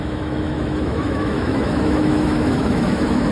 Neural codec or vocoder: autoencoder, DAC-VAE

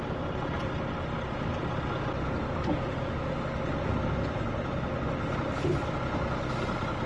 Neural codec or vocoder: none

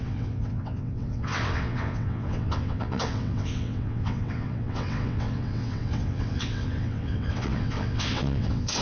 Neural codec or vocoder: vocoder, WaveNeXt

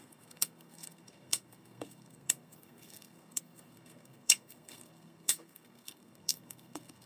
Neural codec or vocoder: codec, SNAC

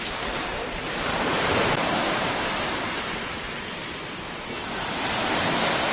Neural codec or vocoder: vocoder, BigVGAN v2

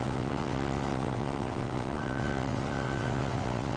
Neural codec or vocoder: vocoder, WaveNeXt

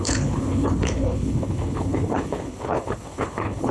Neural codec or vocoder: codec, HILCodec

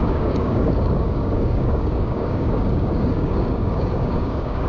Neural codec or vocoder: codec, DAC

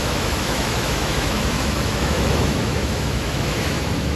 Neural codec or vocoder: autoencoder, DAC-VAE